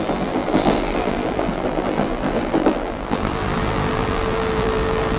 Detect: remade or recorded remade